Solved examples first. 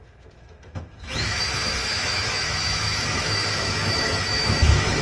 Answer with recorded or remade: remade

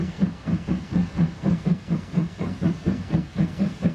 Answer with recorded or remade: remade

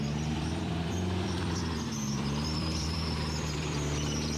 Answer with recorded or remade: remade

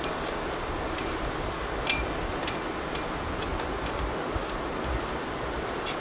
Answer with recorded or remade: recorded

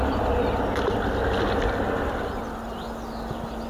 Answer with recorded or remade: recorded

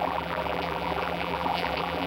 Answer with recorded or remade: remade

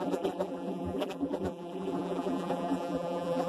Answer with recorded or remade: remade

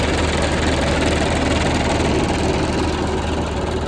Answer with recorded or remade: recorded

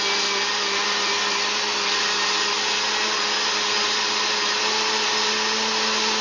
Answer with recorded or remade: recorded